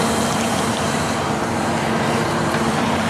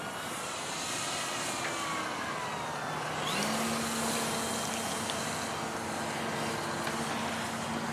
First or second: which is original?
second